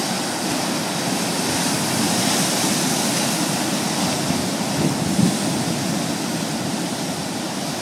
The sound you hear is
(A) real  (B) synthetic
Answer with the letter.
A